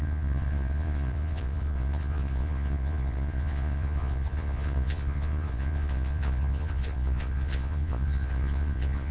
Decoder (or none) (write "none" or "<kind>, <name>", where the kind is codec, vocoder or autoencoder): vocoder, Vocos